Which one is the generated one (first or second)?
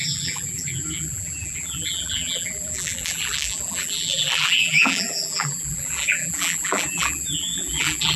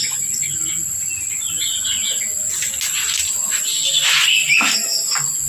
first